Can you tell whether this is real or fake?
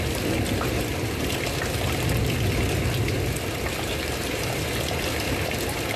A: real